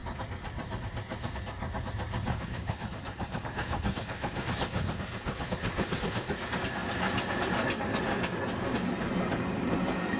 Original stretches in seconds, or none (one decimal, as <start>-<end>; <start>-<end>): 0.0-2.3; 6.3-10.2

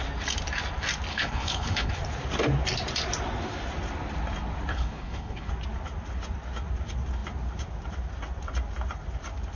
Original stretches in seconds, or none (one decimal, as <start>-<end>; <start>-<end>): 0.0-1.1; 1.9-4.7; 5.5-9.6

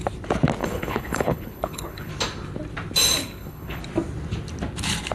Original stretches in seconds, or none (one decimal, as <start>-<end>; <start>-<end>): 0.0-0.6; 2.1-3.2; 3.8-5.1